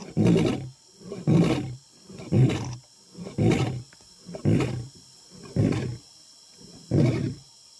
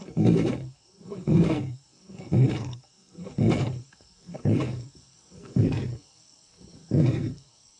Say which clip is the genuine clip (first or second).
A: first